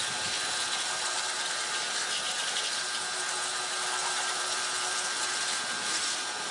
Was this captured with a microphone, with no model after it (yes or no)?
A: no